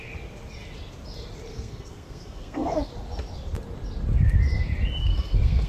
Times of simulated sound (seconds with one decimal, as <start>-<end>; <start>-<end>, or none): 1.5-2.9; 5.0-5.7